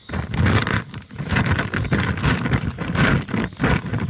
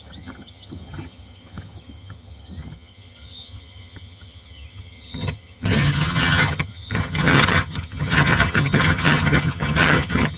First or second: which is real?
first